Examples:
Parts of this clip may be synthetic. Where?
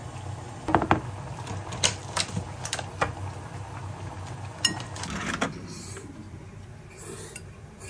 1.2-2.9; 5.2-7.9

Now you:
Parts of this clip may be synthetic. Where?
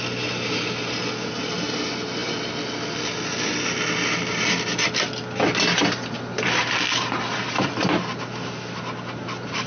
none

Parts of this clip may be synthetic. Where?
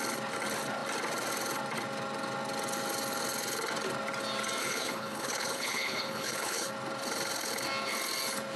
4.6-6.7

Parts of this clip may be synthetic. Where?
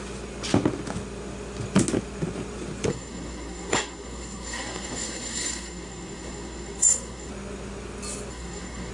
2.9-7.3; 8.3-8.9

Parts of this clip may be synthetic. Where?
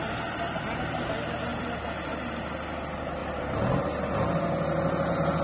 none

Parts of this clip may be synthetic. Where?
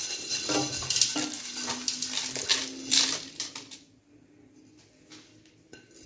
2.6-3.5